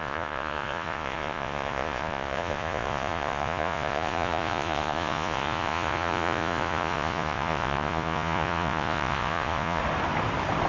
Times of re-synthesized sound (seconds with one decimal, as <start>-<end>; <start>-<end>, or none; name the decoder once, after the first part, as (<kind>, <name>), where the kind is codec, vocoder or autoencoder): 0.0-9.8 (vocoder, Vocos)